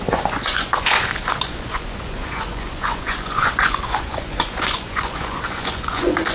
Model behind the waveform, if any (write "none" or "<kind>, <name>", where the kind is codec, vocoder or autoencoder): vocoder, Vocos